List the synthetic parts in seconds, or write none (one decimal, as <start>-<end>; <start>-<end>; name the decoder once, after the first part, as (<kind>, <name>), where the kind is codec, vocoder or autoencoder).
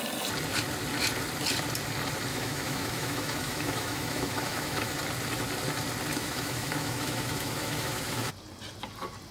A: 2.3-4.9 (autoencoder, DAC-VAE); 6.1-8.3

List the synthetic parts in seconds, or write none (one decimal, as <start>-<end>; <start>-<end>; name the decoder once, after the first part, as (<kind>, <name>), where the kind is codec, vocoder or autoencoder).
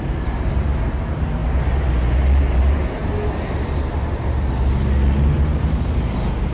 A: none